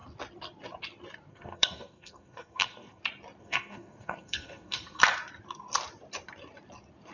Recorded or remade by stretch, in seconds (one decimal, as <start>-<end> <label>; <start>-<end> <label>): 0.0-1.3 recorded; 1.3-3.0 remade; 3.0-3.4 recorded; 3.4-5.0 remade; 5.0-7.1 recorded